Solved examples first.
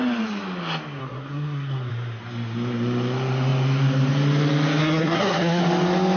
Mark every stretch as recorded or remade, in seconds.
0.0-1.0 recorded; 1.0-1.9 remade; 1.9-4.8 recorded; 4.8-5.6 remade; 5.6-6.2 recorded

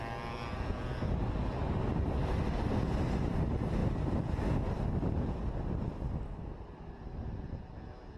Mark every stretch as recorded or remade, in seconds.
0.0-8.2 recorded

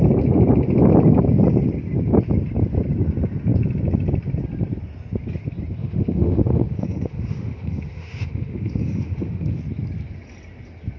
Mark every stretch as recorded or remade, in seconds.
0.0-5.8 recorded; 5.8-9.6 remade; 9.6-11.0 recorded